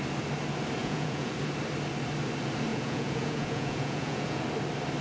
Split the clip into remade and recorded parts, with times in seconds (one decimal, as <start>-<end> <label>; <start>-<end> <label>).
0.0-0.8 recorded; 0.8-1.3 remade; 1.3-2.7 recorded; 2.7-4.4 remade; 4.4-5.0 recorded